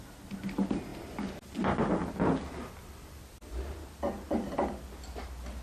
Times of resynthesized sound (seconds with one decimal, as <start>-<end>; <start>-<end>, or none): none